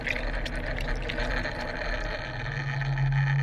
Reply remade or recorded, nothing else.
recorded